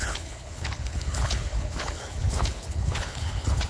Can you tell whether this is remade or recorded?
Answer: remade